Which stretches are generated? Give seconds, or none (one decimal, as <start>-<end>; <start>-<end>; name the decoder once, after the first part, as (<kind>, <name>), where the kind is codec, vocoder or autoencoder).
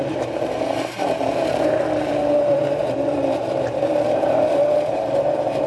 0.0-5.7 (vocoder, BigVGAN v2)